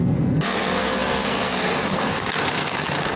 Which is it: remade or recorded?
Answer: remade